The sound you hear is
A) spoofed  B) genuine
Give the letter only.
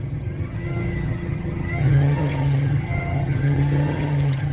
A